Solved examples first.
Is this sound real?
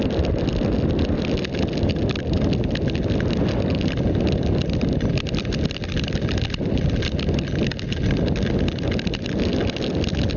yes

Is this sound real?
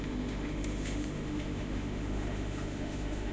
no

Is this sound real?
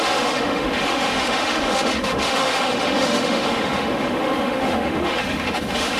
no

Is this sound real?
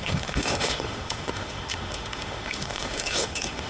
no